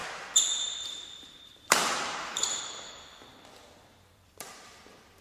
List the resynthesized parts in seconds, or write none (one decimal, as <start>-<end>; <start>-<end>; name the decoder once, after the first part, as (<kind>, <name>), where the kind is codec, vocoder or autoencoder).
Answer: 0.0-2.6 (vocoder, BigVGAN v2); 4.1-4.8